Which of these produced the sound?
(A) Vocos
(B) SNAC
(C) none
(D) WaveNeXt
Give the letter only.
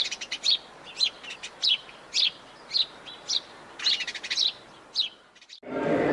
C